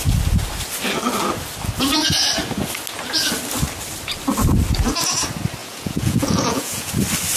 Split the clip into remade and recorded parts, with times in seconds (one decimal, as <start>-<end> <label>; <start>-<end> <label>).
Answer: 0.0-5.6 recorded; 5.6-6.9 remade; 6.9-7.4 recorded